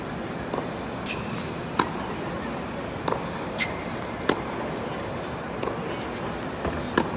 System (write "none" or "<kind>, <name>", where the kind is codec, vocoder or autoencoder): none